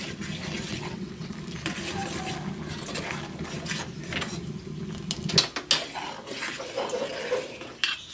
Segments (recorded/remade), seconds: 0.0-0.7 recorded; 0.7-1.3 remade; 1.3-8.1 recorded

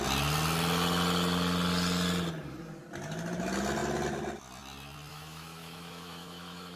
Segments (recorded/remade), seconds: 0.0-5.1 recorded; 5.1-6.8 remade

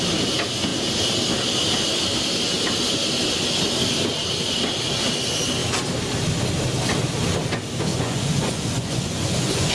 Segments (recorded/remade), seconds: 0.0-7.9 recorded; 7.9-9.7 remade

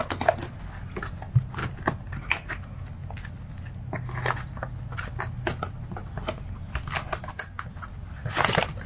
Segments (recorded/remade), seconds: 0.0-8.9 recorded